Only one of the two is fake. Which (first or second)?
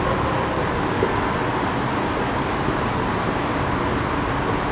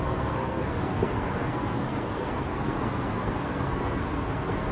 second